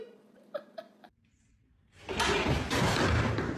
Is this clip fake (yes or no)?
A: no